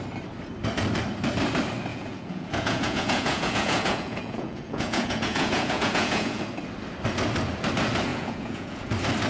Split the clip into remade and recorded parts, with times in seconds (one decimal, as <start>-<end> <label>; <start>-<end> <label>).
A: 0.0-1.9 recorded; 1.9-6.4 remade; 6.4-8.1 recorded; 8.1-8.9 remade; 8.9-9.3 recorded